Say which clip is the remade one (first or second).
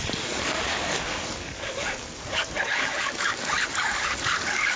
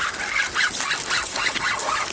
first